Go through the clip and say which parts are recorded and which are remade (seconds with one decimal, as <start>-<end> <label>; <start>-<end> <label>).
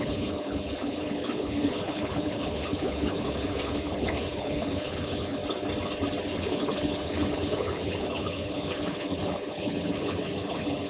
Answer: 0.0-5.4 remade; 5.4-6.2 recorded; 6.2-10.9 remade